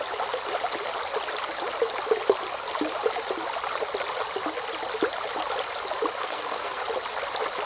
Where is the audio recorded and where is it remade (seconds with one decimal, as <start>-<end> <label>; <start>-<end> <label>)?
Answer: 0.0-6.2 recorded; 6.2-6.8 remade; 6.8-7.7 recorded